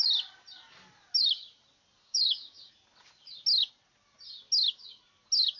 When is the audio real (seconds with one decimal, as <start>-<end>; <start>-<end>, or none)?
0.0-2.0; 2.7-5.6